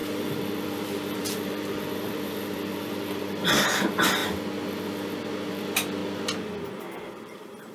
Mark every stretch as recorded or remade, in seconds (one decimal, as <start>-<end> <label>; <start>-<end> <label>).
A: 0.0-4.2 remade; 4.2-5.5 recorded; 5.5-6.0 remade; 6.0-7.0 recorded; 7.0-7.7 remade